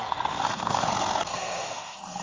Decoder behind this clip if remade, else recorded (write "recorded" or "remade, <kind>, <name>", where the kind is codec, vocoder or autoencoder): remade, codec, SNAC